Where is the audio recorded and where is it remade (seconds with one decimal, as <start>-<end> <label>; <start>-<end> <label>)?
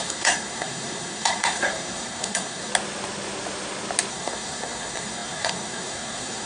0.0-2.7 remade; 2.7-4.1 recorded; 4.1-6.5 remade